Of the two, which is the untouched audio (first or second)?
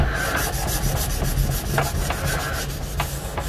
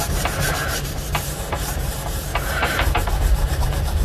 first